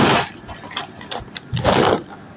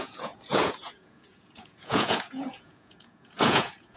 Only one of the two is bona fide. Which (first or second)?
first